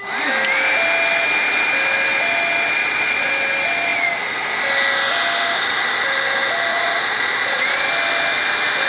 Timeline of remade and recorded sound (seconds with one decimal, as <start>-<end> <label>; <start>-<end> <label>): 0.0-2.8 recorded; 2.8-3.3 remade; 3.3-6.7 recorded; 6.7-7.9 remade; 7.9-8.9 recorded